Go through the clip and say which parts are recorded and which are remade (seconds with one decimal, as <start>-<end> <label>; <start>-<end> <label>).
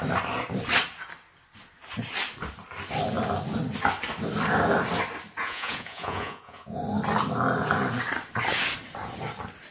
0.0-5.4 recorded; 5.4-6.8 remade; 6.8-9.7 recorded